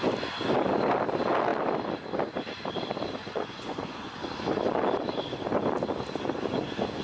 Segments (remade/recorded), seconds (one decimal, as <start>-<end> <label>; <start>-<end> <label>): 0.0-3.2 recorded; 3.2-4.1 remade; 4.1-7.0 recorded